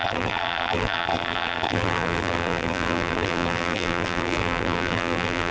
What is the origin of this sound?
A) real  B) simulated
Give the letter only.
B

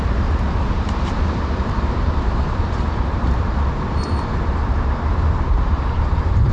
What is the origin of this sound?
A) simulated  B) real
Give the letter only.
A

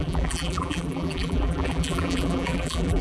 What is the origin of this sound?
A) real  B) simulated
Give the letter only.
B